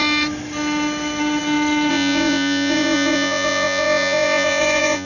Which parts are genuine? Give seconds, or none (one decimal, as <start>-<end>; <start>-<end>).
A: 0.0-1.9